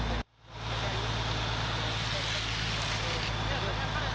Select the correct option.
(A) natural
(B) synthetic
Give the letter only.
A